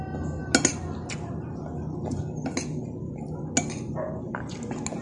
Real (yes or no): yes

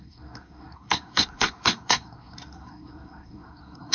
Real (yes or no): no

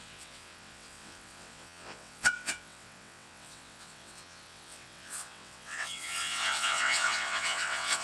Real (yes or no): no